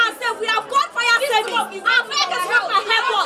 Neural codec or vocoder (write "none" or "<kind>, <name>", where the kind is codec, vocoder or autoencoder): none